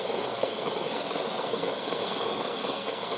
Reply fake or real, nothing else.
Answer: fake